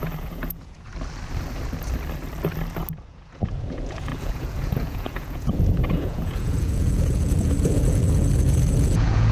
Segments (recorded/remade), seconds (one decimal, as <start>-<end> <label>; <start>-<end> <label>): 0.0-0.9 remade; 0.9-3.1 recorded; 3.1-9.3 remade